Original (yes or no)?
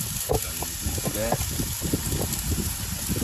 yes